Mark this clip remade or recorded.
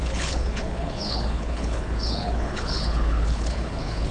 remade